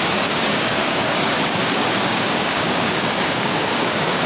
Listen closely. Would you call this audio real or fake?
fake